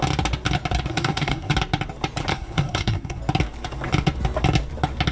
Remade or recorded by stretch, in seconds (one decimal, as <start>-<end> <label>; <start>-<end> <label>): 0.0-0.9 recorded; 0.9-1.5 remade; 1.5-2.3 recorded; 2.3-3.2 remade; 3.2-5.1 recorded